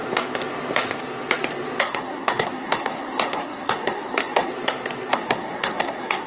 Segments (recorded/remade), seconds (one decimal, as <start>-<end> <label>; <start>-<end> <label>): 0.0-1.8 recorded; 1.8-4.5 remade; 4.5-5.1 recorded; 5.1-6.3 remade